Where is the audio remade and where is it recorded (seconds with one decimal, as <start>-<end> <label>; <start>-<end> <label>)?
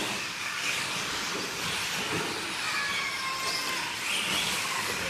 0.0-1.3 remade; 1.3-4.4 recorded; 4.4-5.1 remade